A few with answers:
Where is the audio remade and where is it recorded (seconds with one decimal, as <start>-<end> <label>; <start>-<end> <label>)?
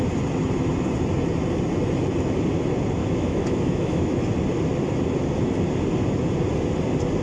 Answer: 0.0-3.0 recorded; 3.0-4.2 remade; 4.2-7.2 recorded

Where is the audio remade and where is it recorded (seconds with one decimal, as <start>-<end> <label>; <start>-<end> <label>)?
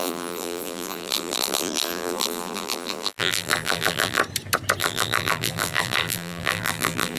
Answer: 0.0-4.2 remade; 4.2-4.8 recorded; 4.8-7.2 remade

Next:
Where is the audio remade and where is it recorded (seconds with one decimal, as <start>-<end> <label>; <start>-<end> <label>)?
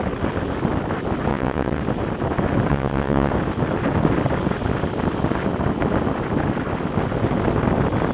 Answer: 0.0-1.3 recorded; 1.3-1.8 remade; 1.8-2.7 recorded; 2.7-3.3 remade; 3.3-8.1 recorded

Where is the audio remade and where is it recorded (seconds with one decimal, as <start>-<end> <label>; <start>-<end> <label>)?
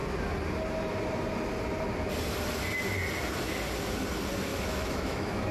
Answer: 0.0-4.5 recorded; 4.5-5.5 remade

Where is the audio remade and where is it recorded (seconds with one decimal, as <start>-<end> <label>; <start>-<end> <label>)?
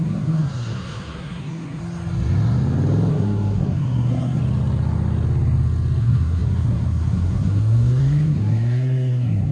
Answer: 0.0-1.8 remade; 1.8-3.1 recorded; 3.1-4.4 remade; 4.4-6.0 recorded; 6.0-9.5 remade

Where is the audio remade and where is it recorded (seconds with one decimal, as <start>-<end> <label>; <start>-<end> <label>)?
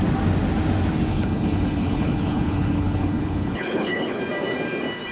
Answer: 0.0-1.1 recorded; 1.1-4.2 remade; 4.2-5.1 recorded